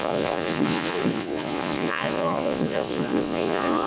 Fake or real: fake